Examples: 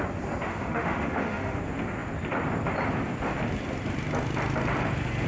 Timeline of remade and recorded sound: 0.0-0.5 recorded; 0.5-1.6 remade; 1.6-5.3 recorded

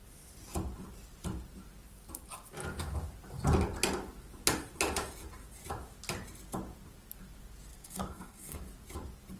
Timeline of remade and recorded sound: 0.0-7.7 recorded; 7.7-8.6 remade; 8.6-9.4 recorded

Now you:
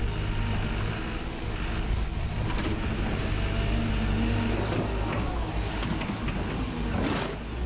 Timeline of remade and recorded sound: 0.0-2.1 recorded; 2.1-3.3 remade; 3.3-7.7 recorded

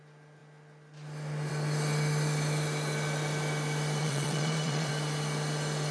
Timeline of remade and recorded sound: 0.0-4.0 recorded; 4.0-4.9 remade; 4.9-5.9 recorded